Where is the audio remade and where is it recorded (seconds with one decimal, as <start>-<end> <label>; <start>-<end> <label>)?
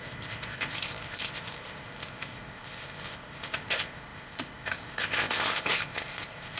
0.0-6.6 remade